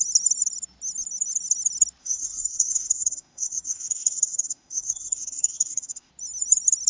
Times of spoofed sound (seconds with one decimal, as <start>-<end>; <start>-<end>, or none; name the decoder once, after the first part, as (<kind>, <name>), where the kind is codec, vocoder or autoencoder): 2.0-6.1 (autoencoder, DAC-VAE)